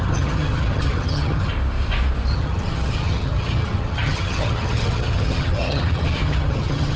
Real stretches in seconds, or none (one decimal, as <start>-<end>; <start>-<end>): 1.5-2.3